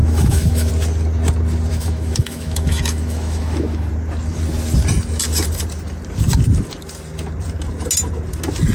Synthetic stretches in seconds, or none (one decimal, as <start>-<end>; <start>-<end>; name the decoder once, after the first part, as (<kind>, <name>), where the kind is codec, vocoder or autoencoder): 0.0-0.7 (autoencoder, DAC-VAE); 1.7-3.9